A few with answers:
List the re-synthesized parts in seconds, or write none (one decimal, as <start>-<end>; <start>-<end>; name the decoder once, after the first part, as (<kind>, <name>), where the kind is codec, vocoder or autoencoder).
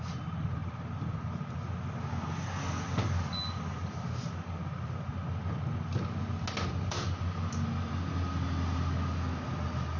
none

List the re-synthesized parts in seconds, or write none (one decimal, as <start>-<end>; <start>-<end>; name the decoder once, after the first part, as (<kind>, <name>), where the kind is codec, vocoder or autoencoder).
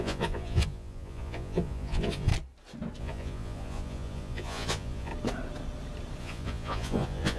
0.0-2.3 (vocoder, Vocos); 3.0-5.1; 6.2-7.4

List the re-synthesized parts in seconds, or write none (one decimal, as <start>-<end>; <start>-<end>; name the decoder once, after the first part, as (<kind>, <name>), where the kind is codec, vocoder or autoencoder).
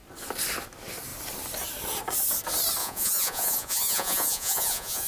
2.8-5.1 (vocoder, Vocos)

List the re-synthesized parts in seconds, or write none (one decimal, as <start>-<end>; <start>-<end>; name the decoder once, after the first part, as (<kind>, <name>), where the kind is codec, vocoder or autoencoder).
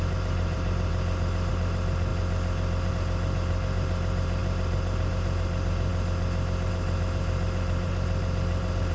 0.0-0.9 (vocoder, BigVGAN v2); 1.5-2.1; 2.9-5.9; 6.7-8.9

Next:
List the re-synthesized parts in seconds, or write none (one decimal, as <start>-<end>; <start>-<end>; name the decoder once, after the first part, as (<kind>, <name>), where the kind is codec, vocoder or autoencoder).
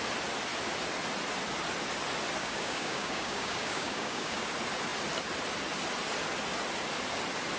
2.4-4.5 (codec, DAC)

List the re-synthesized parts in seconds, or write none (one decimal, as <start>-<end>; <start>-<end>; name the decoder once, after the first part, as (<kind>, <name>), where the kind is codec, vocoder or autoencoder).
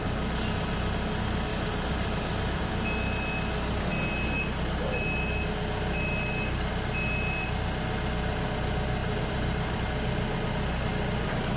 1.5-2.7 (vocoder, BigVGAN v2); 9.0-9.8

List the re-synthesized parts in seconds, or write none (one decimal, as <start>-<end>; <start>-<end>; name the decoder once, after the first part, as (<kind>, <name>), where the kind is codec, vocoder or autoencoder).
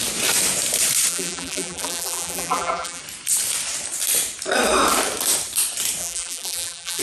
1.1-3.0 (vocoder, BigVGAN v2); 6.0-7.0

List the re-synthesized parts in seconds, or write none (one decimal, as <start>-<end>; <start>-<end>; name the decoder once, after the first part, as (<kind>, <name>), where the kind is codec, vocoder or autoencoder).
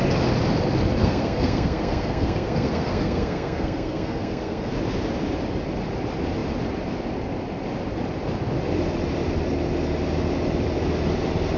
1.0-4.7 (codec, SNAC)